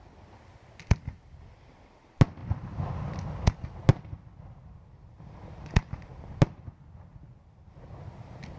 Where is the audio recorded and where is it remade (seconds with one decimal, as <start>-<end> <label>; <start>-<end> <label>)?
0.0-8.6 recorded